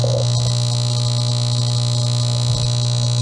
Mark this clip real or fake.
real